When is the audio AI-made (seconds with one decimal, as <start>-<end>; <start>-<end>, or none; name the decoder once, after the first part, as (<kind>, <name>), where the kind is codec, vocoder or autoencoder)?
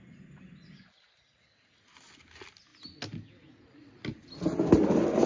none